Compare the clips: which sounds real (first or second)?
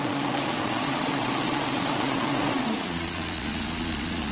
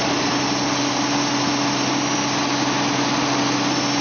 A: second